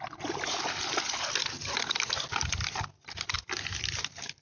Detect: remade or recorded recorded